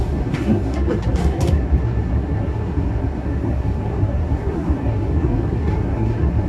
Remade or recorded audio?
remade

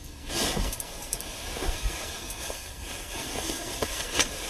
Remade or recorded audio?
remade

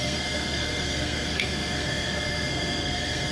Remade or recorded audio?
remade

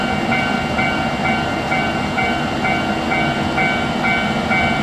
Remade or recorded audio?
recorded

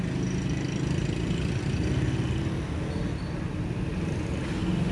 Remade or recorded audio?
recorded